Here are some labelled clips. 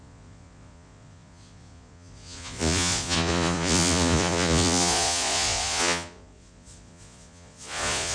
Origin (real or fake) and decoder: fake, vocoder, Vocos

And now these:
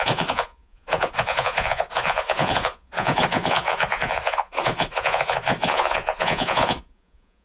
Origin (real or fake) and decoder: fake, vocoder, Vocos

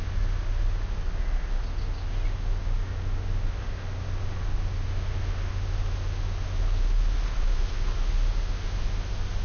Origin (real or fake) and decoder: real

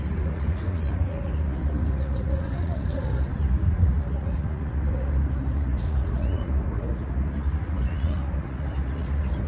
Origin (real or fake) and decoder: fake, vocoder, Vocos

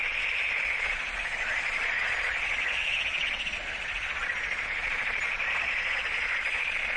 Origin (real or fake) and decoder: fake, vocoder, Vocos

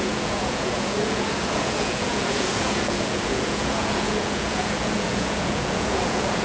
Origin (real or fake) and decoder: fake, vocoder, Vocos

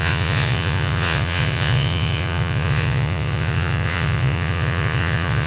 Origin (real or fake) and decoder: fake, vocoder, Vocos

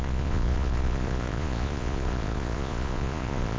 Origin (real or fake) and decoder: fake, vocoder, Vocos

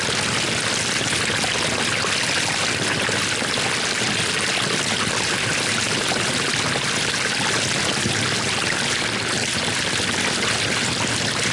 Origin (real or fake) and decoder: real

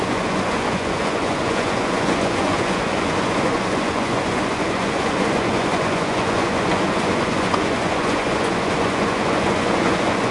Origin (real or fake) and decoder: fake, vocoder, Vocos